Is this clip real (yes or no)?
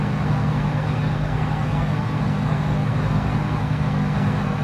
no